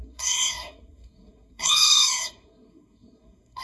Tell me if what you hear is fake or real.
fake